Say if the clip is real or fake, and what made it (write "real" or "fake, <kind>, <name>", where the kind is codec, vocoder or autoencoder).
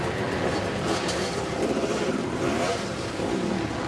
fake, vocoder, BigVGAN v2